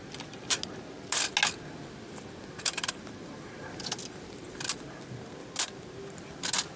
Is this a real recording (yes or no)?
yes